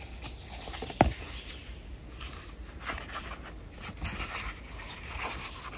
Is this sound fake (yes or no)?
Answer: no